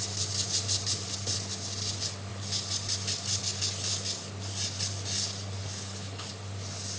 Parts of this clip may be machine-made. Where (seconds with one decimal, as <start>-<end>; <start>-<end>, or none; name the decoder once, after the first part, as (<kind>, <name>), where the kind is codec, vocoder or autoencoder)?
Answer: 5.6-6.3 (codec, HILCodec)